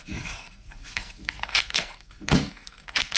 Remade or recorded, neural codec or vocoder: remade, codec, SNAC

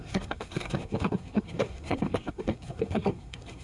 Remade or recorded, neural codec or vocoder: remade, codec, SNAC